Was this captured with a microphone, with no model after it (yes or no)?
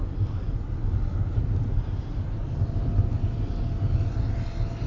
yes